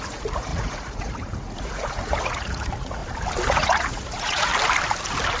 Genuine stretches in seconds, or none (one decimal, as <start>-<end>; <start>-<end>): 3.0-3.5; 4.5-5.4